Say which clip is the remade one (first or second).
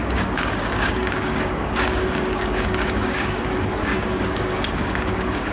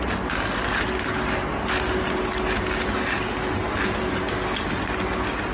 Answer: first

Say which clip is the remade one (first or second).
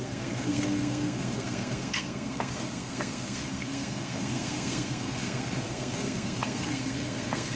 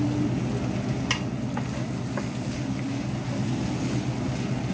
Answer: first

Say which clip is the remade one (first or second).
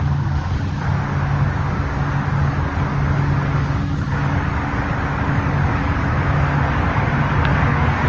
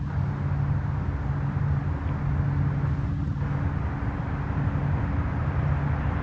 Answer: first